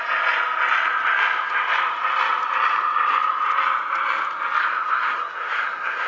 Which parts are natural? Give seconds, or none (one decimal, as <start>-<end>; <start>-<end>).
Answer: 0.0-4.6